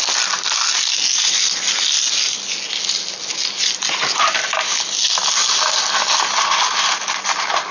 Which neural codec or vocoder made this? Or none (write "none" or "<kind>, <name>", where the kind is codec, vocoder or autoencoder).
none